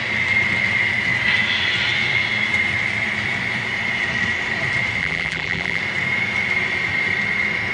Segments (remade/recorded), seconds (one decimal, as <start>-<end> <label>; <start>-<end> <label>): 0.0-5.0 recorded; 5.0-5.8 remade; 5.8-7.7 recorded